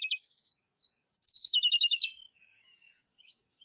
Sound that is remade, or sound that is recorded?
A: remade